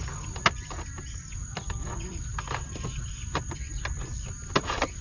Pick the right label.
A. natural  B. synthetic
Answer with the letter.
A